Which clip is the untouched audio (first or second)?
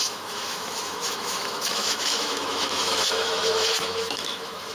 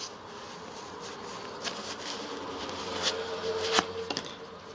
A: second